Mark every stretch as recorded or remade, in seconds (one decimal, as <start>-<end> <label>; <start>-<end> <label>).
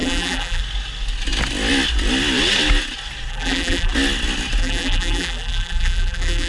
0.0-0.6 remade; 0.6-3.3 recorded; 3.3-3.9 remade; 3.9-4.6 recorded; 4.6-6.5 remade